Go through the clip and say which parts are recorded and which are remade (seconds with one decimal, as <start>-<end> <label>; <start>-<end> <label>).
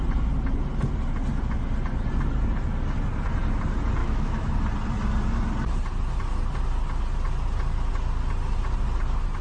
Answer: 0.0-4.0 recorded; 4.0-4.5 remade; 4.5-9.4 recorded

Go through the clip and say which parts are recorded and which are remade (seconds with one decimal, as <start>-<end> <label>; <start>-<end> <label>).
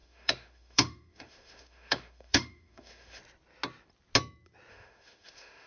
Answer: 0.0-3.2 remade; 3.2-4.7 recorded; 4.7-5.7 remade